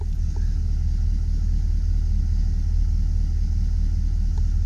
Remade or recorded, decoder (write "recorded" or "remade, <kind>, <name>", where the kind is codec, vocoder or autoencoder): recorded